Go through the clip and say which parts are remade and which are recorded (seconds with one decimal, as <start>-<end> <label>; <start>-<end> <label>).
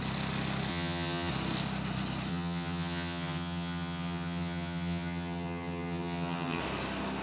0.0-0.7 recorded; 0.7-1.3 remade; 1.3-2.3 recorded; 2.3-6.6 remade; 6.6-7.2 recorded